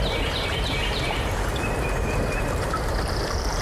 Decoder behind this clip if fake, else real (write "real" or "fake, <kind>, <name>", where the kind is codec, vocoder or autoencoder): fake, vocoder, BigVGAN v2